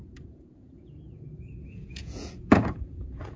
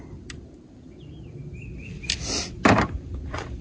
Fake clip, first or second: first